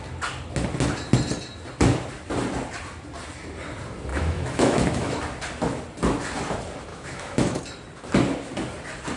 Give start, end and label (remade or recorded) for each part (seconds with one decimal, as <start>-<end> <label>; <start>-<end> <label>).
0.0-4.1 recorded; 4.1-5.2 remade; 5.2-6.9 recorded; 6.9-7.6 remade; 7.6-9.2 recorded